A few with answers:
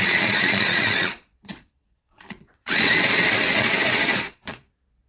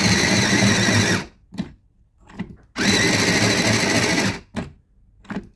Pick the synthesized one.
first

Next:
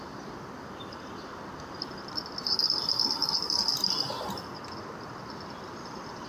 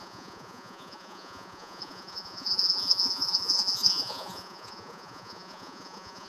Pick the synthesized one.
second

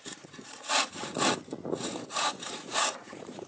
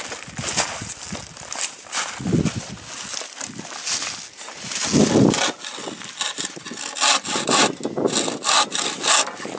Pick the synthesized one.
first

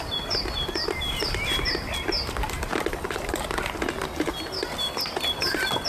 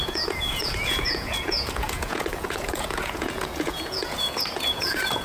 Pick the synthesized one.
second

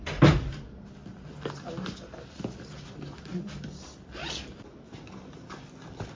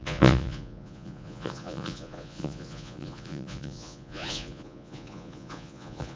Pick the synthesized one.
second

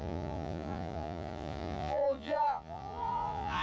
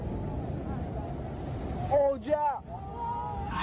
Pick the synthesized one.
first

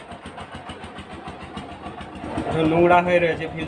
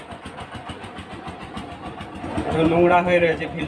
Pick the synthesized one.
second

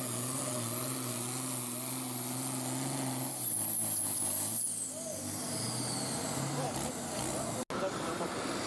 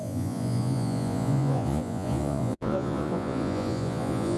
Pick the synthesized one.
second